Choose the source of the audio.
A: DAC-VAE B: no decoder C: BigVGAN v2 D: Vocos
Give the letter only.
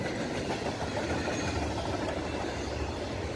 B